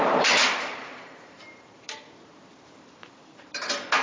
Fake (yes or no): yes